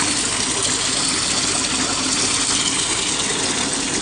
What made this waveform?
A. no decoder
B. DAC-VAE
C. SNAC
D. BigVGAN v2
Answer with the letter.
A